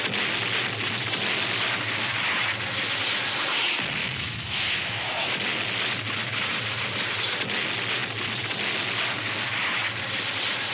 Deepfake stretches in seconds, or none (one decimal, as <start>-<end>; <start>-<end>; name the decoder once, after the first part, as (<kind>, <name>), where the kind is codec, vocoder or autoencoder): 4.0-5.4 (autoencoder, DAC-VAE)